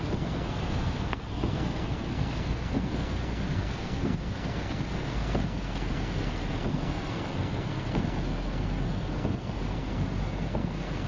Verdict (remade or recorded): remade